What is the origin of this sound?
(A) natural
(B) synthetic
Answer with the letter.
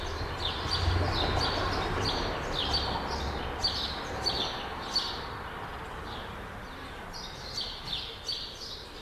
A